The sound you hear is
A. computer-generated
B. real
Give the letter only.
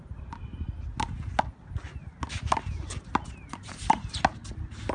B